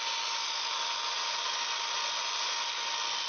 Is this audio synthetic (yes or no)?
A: no